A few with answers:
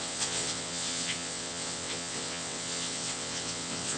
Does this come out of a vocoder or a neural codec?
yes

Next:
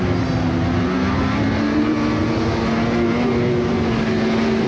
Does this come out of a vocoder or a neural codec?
no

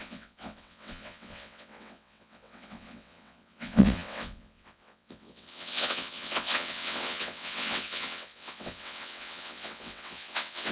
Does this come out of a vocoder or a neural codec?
yes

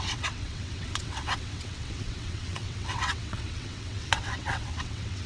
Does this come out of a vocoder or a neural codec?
yes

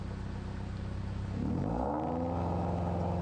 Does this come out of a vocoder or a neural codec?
no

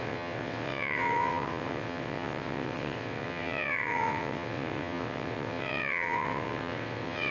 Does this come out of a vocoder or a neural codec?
yes